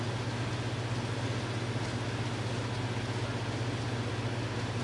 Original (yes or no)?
yes